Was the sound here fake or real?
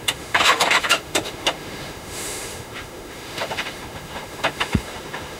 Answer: fake